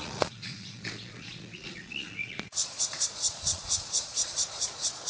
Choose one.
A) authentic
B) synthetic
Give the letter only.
B